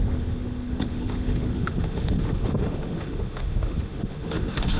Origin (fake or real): fake